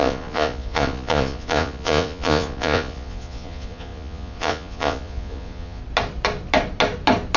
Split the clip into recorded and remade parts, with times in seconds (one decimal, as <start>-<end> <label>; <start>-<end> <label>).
0.0-5.8 remade; 5.8-7.4 recorded

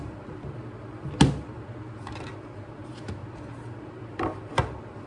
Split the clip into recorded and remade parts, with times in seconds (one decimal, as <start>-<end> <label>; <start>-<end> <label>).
0.0-3.2 recorded; 3.2-3.8 remade; 3.8-5.1 recorded

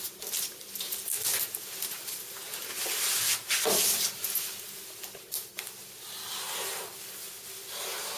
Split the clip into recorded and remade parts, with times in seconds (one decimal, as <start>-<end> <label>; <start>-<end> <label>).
0.0-8.2 recorded

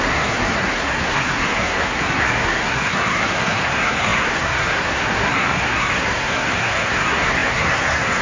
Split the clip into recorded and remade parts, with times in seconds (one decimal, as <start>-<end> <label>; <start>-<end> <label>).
0.0-8.2 remade

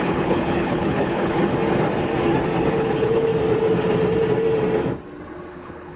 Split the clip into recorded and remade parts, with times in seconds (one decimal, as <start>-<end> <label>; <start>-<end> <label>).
0.0-1.4 remade; 1.4-2.7 recorded; 2.7-3.3 remade; 3.3-5.5 recorded; 5.5-6.0 remade